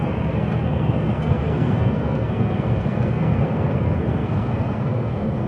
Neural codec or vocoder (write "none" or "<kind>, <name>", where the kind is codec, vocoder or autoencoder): codec, SNAC